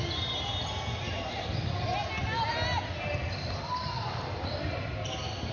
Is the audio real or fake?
real